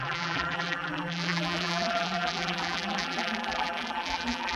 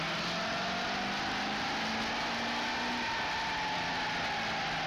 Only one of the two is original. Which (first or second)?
second